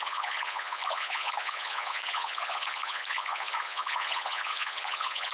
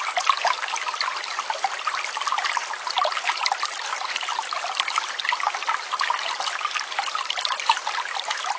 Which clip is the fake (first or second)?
first